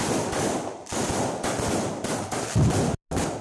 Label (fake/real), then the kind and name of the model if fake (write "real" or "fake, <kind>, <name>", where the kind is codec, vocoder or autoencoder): real